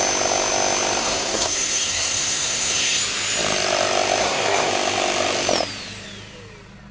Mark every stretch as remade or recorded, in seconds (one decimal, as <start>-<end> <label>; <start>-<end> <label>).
0.0-1.0 recorded; 1.0-3.0 remade; 3.0-4.2 recorded; 4.2-4.7 remade; 4.7-6.9 recorded